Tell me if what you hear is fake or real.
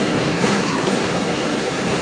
fake